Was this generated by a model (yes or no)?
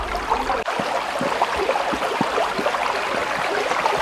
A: no